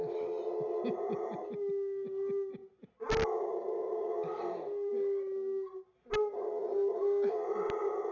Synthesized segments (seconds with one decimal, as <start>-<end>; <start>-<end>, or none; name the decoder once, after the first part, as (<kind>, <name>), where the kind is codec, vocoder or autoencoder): none